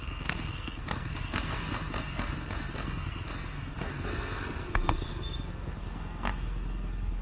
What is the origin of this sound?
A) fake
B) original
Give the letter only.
A